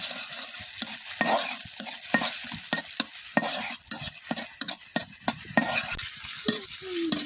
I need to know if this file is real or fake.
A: real